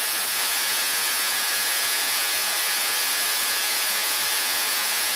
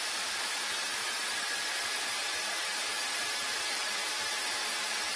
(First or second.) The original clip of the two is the second